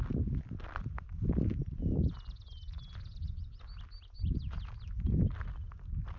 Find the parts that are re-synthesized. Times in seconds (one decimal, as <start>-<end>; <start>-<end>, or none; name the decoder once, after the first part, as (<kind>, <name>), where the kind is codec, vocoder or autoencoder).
none